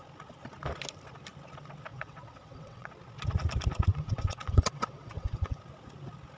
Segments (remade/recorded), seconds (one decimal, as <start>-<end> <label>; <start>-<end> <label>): 0.0-1.9 recorded; 1.9-2.9 remade; 2.9-3.9 recorded; 3.9-5.6 remade; 5.6-6.4 recorded